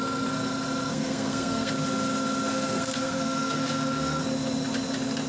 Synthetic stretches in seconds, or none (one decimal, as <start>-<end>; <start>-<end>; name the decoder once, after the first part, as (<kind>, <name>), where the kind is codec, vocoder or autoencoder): 0.9-1.7 (codec, SNAC); 2.5-4.2